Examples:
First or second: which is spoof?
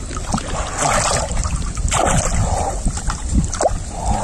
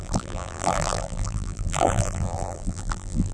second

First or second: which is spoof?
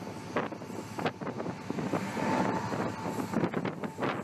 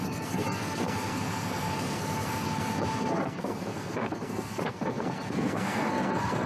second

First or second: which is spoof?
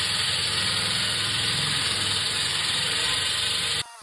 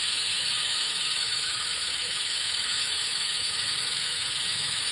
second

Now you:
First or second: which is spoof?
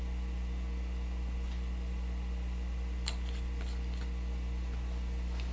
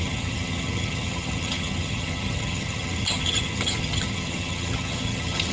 second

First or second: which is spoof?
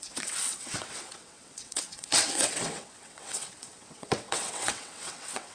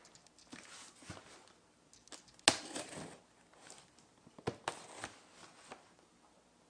first